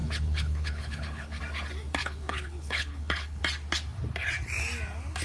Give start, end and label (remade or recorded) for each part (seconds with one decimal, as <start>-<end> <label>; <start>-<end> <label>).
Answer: 0.0-1.4 remade; 1.4-2.0 recorded; 2.0-3.4 remade; 3.4-5.2 recorded